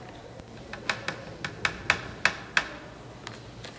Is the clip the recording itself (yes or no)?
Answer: yes